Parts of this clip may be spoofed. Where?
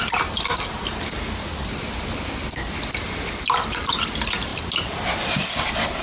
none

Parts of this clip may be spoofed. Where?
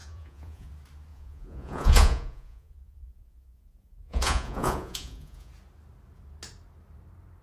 0.0-0.7 (vocoder, Vocos); 1.1-5.5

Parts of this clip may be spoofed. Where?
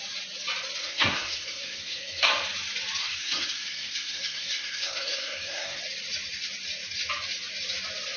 0.8-2.3 (codec, SNAC); 3.0-5.8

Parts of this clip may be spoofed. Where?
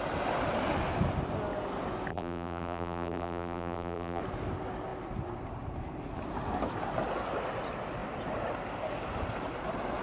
2.1-4.2 (vocoder, BigVGAN v2)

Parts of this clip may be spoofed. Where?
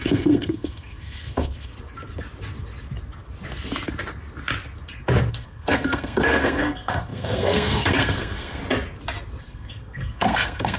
0.0-1.7 (codec, SNAC); 5.3-8.6; 9.4-10.8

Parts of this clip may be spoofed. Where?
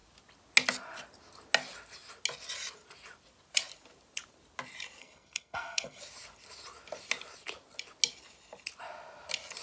5.0-6.0 (codec, SNAC)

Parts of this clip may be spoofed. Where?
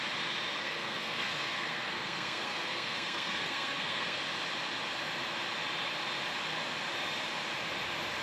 0.6-4.2 (codec, SNAC)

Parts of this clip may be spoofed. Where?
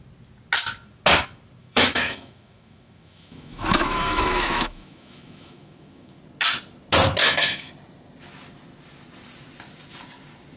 1.6-6.2 (autoencoder, DAC-VAE); 7.2-7.7